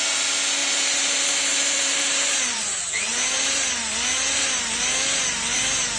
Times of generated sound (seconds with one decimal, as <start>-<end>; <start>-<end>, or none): 0.6-2.9